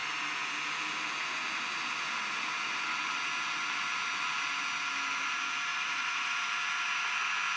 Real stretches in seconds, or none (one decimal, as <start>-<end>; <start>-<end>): 0.0-5.7; 6.4-7.6